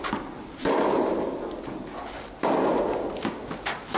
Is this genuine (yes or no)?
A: yes